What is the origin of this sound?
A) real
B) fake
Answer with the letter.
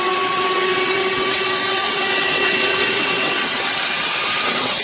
B